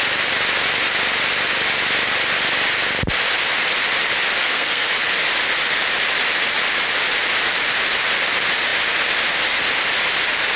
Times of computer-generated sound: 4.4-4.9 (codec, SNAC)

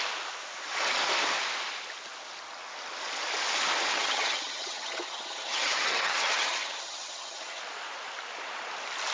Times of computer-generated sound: 3.9-7.6 (vocoder, HiFi-GAN)

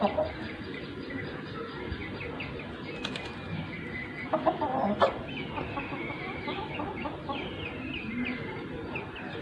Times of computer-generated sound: none

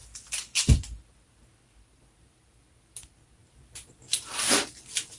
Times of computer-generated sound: none

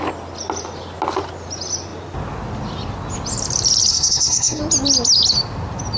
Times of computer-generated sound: 3.9-4.6 (codec, SNAC)